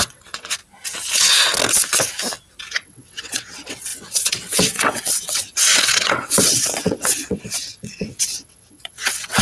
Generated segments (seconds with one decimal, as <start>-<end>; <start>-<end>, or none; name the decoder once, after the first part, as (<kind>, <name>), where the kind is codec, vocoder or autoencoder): 0.0-0.6 (vocoder, WaveNeXt); 2.7-9.4

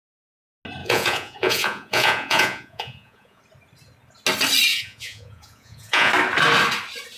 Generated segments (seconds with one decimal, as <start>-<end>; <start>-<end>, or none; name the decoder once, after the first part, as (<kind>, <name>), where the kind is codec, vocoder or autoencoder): 0.8-3.4 (vocoder, Vocos); 4.7-6.1

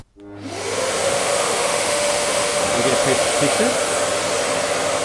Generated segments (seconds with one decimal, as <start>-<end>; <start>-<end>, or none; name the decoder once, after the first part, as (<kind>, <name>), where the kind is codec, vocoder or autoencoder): 1.1-2.8 (autoencoder, DAC-VAE)

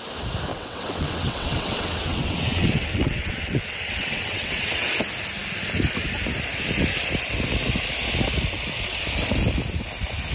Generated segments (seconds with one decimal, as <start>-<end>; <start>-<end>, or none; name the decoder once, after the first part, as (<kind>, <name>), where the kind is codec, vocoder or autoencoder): 0.5-4.9 (vocoder, WaveNeXt)